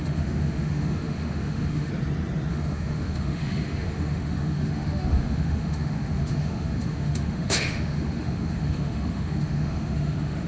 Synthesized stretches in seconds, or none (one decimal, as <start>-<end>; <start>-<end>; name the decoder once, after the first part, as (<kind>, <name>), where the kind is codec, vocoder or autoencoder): 0.0-1.9 (autoencoder, DAC-VAE); 2.5-10.5